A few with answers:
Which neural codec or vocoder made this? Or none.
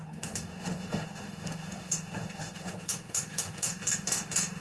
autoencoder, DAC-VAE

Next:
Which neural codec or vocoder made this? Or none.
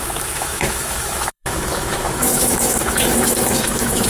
autoencoder, DAC-VAE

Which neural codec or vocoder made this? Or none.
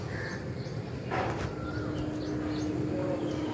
none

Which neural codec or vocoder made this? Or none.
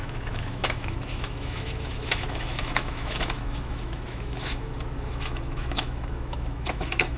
autoencoder, DAC-VAE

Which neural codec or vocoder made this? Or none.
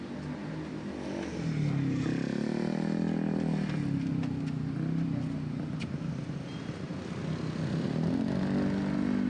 none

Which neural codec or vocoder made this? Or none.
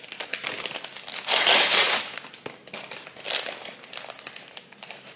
none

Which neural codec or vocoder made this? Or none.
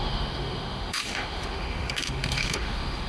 autoencoder, DAC-VAE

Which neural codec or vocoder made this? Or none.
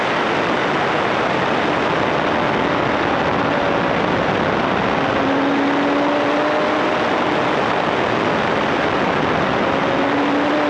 none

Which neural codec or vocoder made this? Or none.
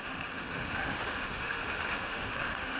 autoencoder, DAC-VAE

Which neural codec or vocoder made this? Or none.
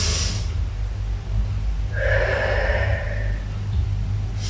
none